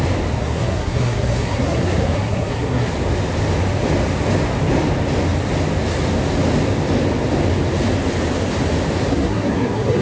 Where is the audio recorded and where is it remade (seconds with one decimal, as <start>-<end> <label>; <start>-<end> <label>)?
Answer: 0.0-0.4 recorded; 0.4-2.9 remade; 2.9-9.1 recorded; 9.1-10.0 remade